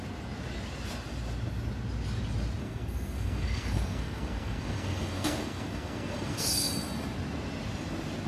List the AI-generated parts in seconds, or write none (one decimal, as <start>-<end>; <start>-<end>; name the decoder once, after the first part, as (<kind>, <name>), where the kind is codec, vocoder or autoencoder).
2.6-6.7 (codec, SNAC)